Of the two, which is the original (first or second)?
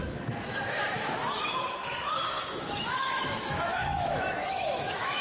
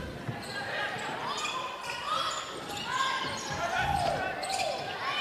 second